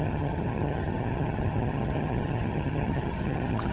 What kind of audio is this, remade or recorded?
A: remade